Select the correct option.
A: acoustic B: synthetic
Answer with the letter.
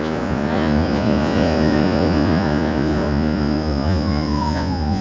B